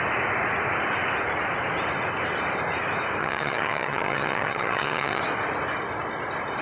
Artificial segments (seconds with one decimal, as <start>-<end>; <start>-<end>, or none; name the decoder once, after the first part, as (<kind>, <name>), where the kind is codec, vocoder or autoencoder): 3.2-5.2 (vocoder, HiFi-GAN)